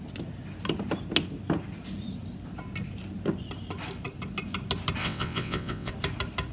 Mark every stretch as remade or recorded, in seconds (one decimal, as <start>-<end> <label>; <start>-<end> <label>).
0.0-5.0 recorded; 5.0-5.9 remade; 5.9-6.5 recorded